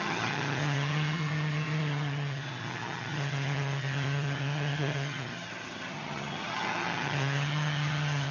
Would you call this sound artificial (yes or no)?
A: yes